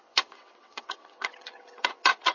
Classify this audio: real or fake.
fake